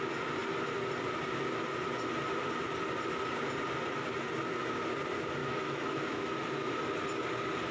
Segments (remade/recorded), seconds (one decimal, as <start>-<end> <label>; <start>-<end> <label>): 0.0-5.4 recorded; 5.4-6.2 remade; 6.2-7.7 recorded